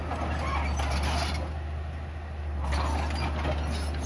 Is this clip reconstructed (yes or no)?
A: no